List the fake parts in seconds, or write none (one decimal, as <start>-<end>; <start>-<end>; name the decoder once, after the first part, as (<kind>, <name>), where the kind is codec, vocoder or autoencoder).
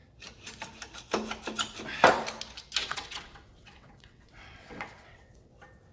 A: 2.8-5.5 (vocoder, WaveNeXt)